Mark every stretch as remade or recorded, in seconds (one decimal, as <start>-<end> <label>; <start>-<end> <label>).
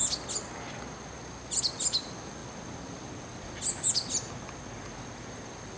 0.0-5.8 recorded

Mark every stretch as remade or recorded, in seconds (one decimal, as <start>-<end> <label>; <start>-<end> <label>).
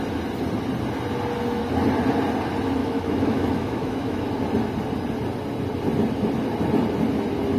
0.0-2.8 recorded; 2.8-4.3 remade; 4.3-7.6 recorded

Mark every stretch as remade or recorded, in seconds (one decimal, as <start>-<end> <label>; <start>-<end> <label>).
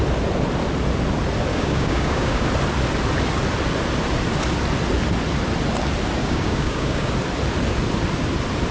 0.0-1.5 recorded; 1.5-2.5 remade; 2.5-6.2 recorded; 6.2-7.1 remade; 7.1-8.7 recorded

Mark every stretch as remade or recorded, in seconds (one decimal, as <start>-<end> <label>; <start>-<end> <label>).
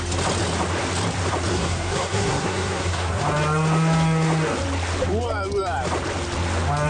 0.0-1.5 recorded; 1.5-3.2 remade; 3.2-6.9 recorded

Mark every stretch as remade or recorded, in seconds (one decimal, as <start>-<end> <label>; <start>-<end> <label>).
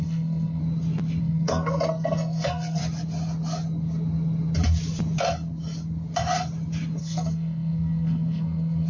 0.0-0.6 remade; 0.6-1.2 recorded; 1.2-2.8 remade; 2.8-7.0 recorded; 7.0-8.9 remade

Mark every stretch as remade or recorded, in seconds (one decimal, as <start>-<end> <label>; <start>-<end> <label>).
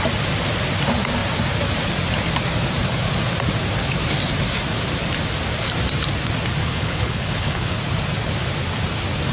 0.0-6.6 recorded; 6.6-7.8 remade; 7.8-9.3 recorded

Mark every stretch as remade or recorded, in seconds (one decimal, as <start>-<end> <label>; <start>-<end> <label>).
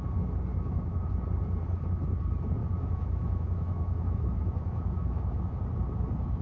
0.0-0.5 recorded; 0.5-1.1 remade; 1.1-2.6 recorded; 2.6-5.6 remade; 5.6-6.4 recorded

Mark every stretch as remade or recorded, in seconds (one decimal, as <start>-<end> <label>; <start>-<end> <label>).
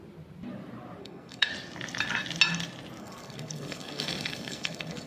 0.0-1.0 recorded; 1.0-1.5 remade; 1.5-3.0 recorded; 3.0-5.1 remade